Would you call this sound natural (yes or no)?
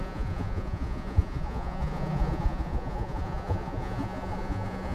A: no